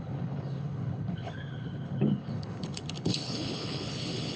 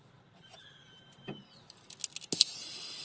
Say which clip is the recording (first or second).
second